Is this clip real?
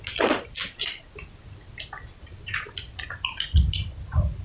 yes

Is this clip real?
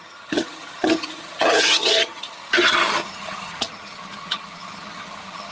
no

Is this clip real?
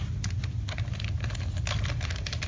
yes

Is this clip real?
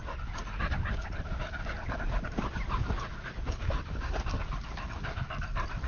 yes